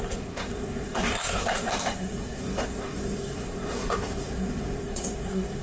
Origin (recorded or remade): remade